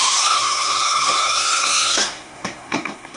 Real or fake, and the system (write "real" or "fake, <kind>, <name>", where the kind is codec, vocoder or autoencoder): fake, codec, SNAC